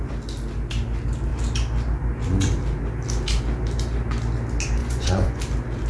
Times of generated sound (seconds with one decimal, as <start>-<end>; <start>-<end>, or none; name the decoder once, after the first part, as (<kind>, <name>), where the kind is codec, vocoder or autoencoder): 4.8-5.4 (vocoder, Vocos)